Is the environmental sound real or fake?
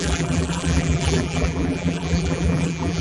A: fake